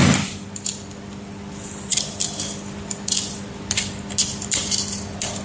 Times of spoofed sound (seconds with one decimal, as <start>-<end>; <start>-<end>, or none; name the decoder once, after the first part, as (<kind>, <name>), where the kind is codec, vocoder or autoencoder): none